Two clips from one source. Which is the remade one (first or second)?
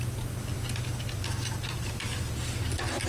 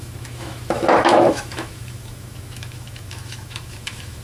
second